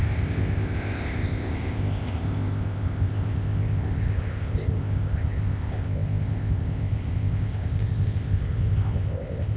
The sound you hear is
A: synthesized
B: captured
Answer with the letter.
A